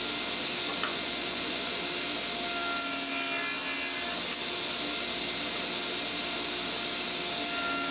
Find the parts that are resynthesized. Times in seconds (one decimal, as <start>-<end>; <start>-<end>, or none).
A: 0.9-1.8